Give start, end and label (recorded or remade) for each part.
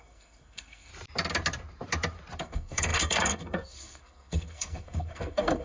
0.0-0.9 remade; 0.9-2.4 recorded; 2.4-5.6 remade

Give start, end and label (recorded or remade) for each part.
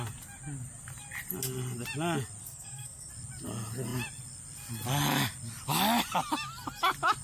0.0-2.4 recorded; 2.4-3.1 remade; 3.1-7.2 recorded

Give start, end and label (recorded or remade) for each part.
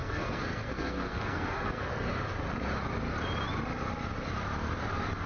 0.0-1.9 remade; 1.9-5.3 recorded